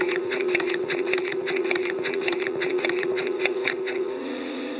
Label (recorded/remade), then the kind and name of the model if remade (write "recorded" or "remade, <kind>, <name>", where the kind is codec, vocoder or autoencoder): remade, vocoder, Vocos